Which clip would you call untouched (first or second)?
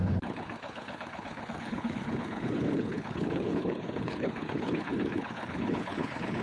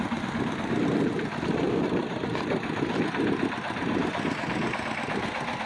second